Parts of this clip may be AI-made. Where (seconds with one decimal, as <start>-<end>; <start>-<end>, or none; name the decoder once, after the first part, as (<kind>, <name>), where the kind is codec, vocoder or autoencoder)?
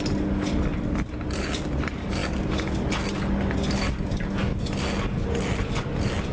none